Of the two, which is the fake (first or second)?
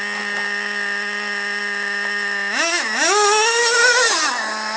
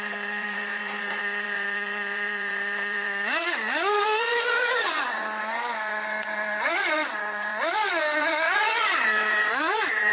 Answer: second